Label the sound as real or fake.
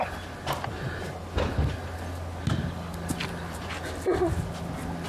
real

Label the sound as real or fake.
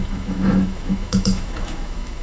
fake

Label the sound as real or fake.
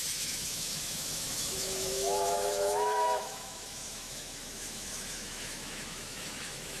fake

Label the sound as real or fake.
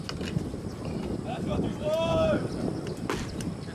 real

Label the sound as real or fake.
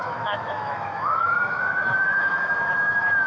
fake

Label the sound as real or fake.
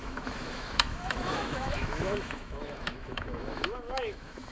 fake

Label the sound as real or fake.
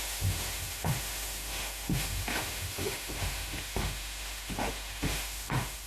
fake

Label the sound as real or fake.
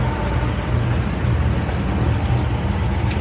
real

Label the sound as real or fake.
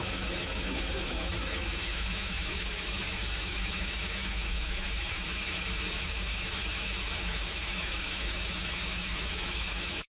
fake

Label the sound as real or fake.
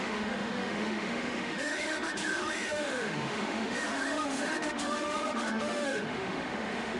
fake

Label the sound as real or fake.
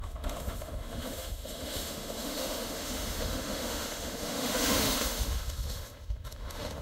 fake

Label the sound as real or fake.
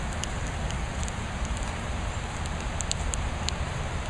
real